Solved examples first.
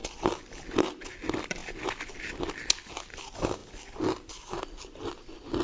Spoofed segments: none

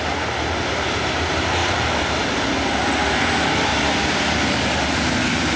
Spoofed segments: none